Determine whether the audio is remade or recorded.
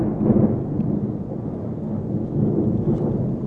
recorded